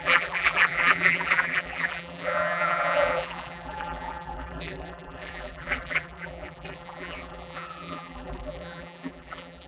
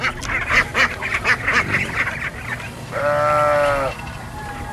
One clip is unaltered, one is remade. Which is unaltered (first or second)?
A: second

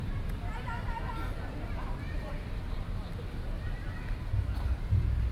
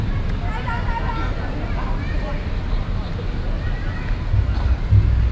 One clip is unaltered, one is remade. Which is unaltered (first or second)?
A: second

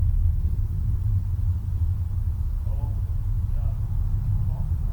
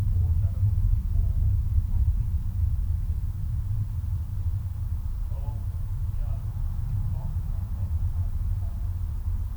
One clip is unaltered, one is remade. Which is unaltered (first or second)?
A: first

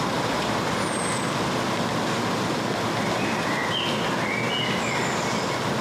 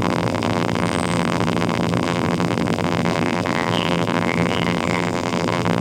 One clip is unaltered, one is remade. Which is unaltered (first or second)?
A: first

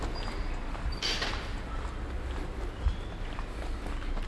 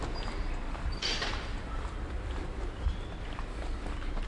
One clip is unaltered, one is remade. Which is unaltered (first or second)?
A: first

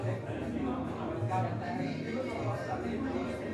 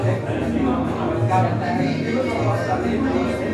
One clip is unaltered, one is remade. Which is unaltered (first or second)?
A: second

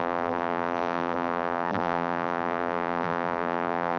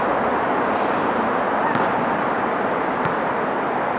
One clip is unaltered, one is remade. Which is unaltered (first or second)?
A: second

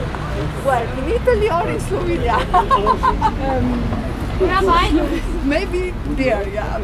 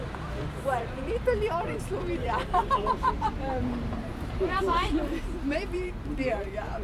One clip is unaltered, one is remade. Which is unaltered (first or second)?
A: first